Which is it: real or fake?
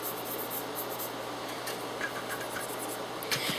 real